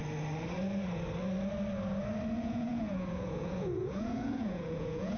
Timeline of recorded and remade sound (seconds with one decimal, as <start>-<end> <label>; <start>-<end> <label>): 0.0-2.4 recorded; 2.4-5.2 remade